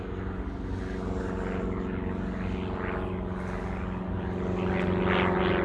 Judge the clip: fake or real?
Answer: real